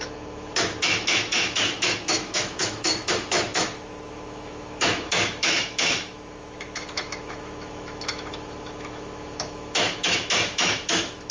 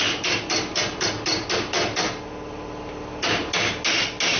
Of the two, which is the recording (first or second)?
second